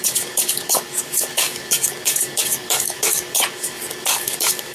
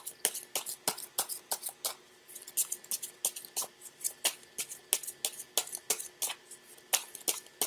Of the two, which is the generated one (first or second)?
first